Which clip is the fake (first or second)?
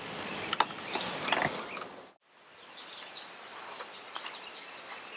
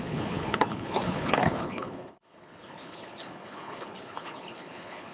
second